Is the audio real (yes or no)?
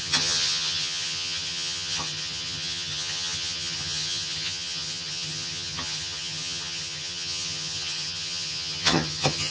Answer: no